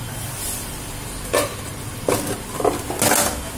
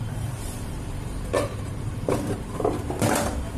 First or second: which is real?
first